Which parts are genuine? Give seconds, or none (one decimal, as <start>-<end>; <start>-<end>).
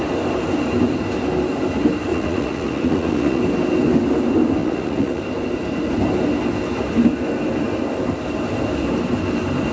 0.0-2.1; 3.4-4.6; 5.2-9.7